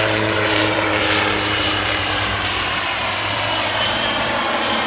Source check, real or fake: fake